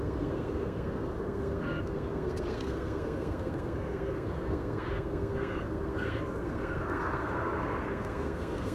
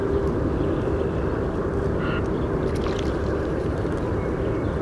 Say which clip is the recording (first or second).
second